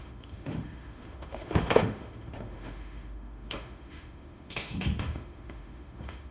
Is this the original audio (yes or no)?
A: no